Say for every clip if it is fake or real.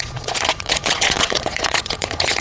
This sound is fake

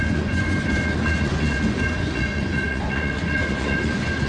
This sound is fake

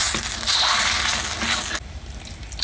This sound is real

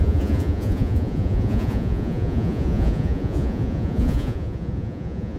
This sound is fake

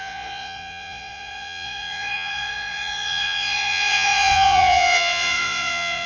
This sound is fake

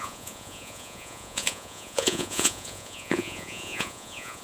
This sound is fake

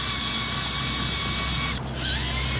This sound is real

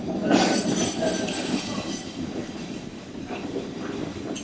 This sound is real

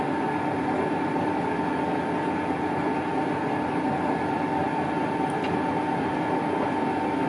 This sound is real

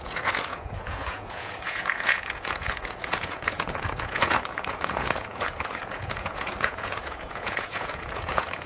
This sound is fake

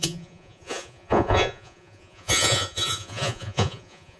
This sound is fake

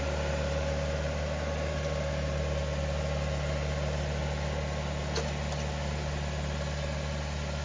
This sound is real